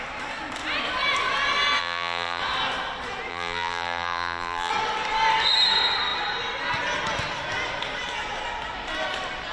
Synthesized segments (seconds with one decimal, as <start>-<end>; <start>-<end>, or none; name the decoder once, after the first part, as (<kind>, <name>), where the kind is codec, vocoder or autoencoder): 1.8-2.4 (vocoder, BigVGAN v2); 3.3-4.7